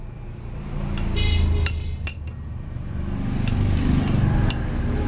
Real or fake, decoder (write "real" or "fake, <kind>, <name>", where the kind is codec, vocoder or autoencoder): real